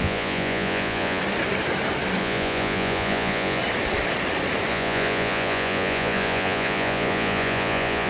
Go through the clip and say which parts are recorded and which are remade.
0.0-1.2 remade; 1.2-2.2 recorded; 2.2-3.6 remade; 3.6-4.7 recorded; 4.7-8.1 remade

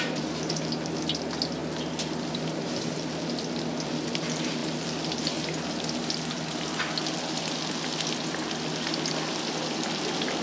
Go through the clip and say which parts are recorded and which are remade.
0.0-10.4 recorded

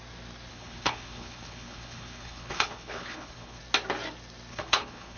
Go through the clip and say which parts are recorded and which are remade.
0.0-0.5 recorded; 0.5-3.6 remade; 3.6-4.5 recorded; 4.5-5.2 remade

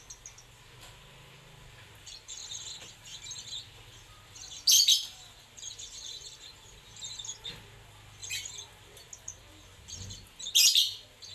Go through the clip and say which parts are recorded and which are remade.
0.0-2.4 recorded; 2.4-6.8 remade; 6.8-11.3 recorded

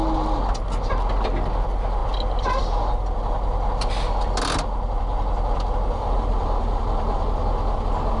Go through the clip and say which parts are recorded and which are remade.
0.0-8.2 recorded